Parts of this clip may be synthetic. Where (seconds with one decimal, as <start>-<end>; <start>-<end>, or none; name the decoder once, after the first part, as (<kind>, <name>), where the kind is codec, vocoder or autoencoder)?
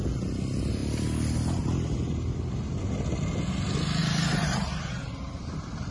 4.0-5.9 (vocoder, BigVGAN v2)